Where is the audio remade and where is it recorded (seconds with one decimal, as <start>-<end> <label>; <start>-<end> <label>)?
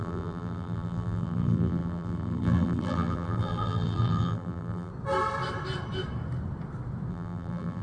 0.0-4.9 remade; 4.9-7.1 recorded; 7.1-7.8 remade